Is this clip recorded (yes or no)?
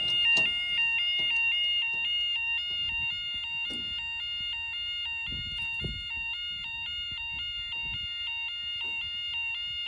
yes